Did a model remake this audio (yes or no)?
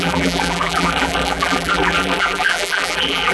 yes